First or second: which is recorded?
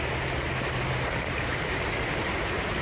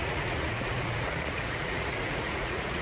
first